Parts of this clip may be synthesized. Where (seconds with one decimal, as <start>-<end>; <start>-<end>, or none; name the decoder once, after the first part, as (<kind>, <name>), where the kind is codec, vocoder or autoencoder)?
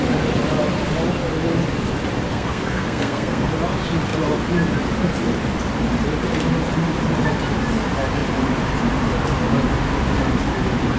2.3-3.5 (codec, SNAC)